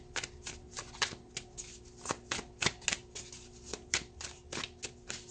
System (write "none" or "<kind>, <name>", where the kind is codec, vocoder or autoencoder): none